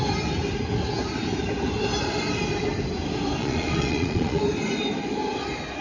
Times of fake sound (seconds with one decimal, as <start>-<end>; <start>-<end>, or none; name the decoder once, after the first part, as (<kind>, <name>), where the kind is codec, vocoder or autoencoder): 3.4-4.4 (vocoder, Vocos)